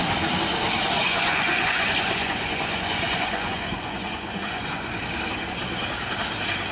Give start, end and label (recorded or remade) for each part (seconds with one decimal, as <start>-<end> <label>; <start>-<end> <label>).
0.0-1.0 recorded; 1.0-5.0 remade; 5.0-6.7 recorded